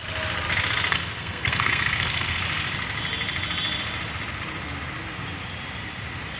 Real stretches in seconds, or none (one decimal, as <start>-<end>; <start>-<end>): 0.0-0.9; 2.4-6.4

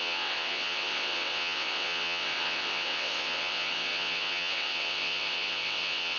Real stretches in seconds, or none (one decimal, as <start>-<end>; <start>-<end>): none

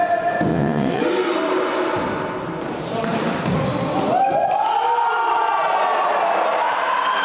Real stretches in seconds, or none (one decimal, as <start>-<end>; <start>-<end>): 0.0-0.5; 1.0-7.2

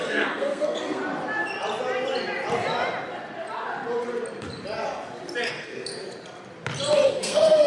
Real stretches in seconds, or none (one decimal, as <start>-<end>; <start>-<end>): 1.0-5.5; 5.9-7.1

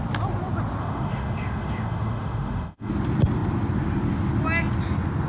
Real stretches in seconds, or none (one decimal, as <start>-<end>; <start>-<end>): 0.0-0.8; 2.9-5.3